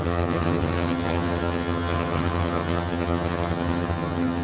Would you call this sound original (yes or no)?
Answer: no